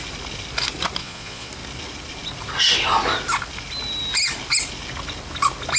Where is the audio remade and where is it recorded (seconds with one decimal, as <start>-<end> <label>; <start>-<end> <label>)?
0.0-1.0 recorded; 1.0-1.5 remade; 1.5-5.8 recorded